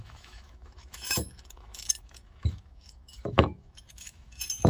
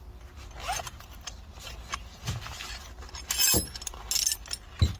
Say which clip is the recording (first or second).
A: second